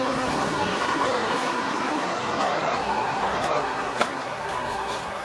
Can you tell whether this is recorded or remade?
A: remade